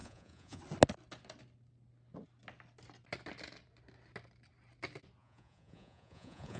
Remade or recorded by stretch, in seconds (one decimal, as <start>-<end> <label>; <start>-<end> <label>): 0.0-0.6 remade; 0.6-5.2 recorded; 5.2-6.6 remade